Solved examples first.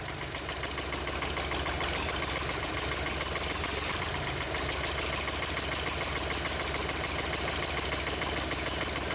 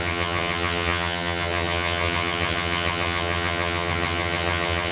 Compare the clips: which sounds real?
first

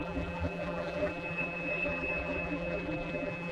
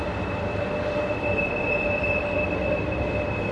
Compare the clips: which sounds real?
second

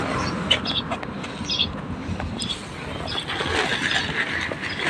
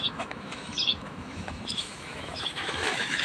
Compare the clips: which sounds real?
first